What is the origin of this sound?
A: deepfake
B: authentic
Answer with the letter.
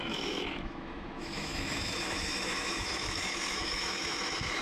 A